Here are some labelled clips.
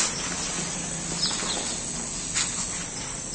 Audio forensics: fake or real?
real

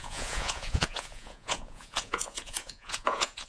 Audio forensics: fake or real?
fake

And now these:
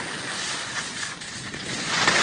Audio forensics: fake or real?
fake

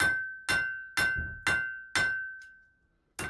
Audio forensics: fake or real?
real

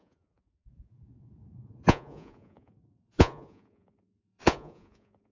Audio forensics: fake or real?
fake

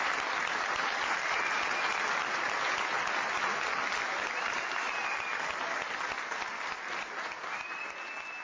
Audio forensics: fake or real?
real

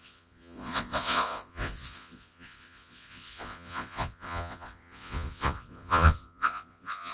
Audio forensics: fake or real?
fake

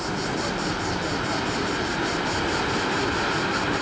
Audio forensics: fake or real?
real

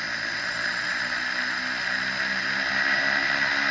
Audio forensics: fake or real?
real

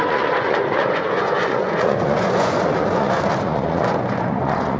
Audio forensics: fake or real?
fake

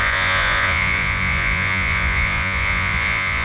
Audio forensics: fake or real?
fake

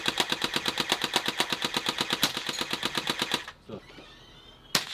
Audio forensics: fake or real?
real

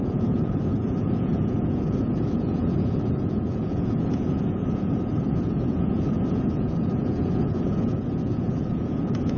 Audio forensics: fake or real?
fake